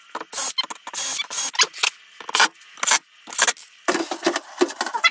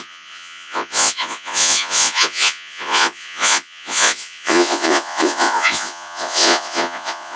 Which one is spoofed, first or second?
second